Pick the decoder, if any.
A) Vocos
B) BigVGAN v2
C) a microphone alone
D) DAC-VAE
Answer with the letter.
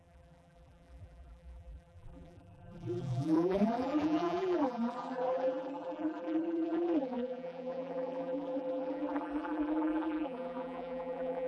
B